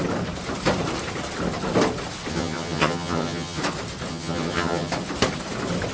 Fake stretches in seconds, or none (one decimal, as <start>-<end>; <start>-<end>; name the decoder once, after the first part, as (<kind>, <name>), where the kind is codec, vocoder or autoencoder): 2.3-3.6 (vocoder, HiFi-GAN); 4.1-4.9